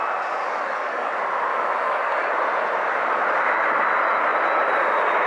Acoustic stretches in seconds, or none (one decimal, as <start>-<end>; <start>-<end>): 0.0-0.4; 1.1-1.5; 2.3-5.3